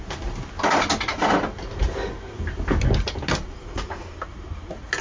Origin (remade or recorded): recorded